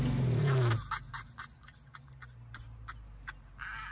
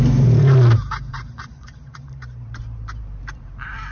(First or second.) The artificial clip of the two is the second